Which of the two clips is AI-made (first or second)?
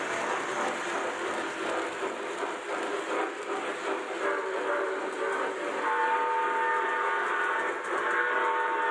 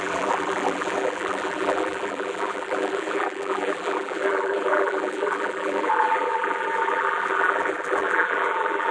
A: second